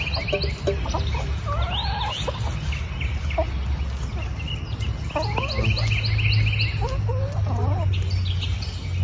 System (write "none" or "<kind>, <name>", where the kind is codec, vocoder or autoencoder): none